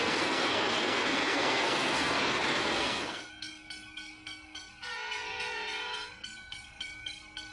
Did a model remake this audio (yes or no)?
yes